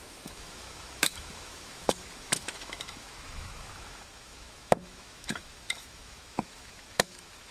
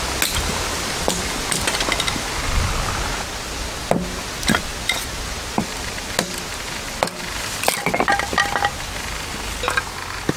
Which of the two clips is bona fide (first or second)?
second